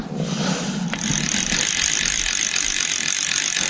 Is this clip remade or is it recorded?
recorded